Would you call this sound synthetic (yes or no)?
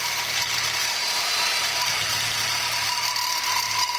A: yes